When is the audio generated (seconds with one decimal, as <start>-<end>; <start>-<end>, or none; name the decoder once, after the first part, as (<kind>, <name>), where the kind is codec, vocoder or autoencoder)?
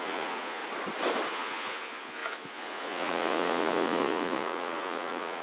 0.0-0.6 (vocoder, Vocos); 1.3-5.4